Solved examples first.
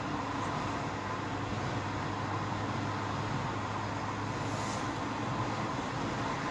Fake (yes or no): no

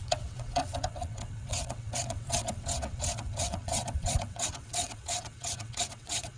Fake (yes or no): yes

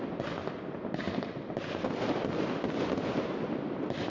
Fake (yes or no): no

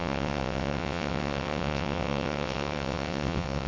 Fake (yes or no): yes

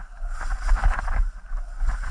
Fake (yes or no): no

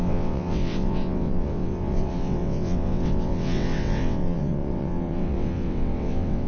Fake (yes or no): yes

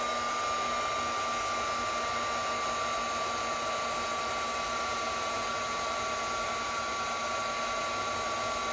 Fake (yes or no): no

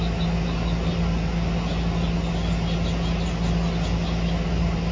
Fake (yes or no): no